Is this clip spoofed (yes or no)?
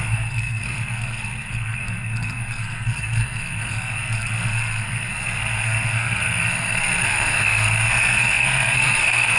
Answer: yes